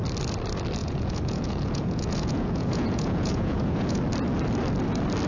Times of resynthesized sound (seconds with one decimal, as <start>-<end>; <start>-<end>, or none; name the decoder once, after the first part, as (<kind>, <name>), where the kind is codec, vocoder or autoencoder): 0.8-4.0 (vocoder, Vocos)